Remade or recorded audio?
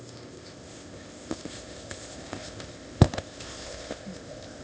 remade